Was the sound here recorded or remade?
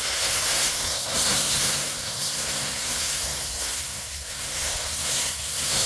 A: remade